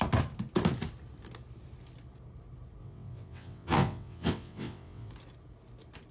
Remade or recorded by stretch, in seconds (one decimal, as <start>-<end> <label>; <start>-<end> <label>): 0.0-2.8 recorded; 2.8-5.1 remade; 5.1-6.1 recorded

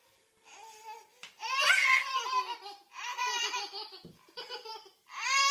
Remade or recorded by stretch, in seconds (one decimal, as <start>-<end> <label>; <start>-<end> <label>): 0.0-3.1 recorded; 3.1-4.7 remade; 4.7-5.5 recorded

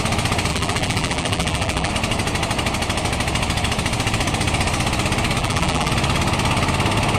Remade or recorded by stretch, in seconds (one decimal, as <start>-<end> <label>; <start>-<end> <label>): 0.0-0.5 recorded; 0.5-1.9 remade; 1.9-5.4 recorded; 5.4-5.9 remade; 5.9-7.2 recorded